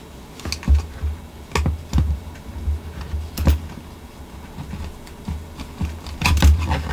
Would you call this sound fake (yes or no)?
no